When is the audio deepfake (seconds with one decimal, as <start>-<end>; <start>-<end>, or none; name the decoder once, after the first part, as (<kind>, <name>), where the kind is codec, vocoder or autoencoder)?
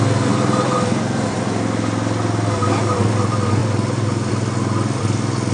none